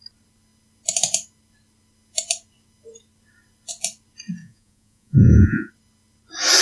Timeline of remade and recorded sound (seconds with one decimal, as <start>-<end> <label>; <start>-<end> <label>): 0.0-4.4 recorded; 4.4-5.7 remade; 5.7-6.6 recorded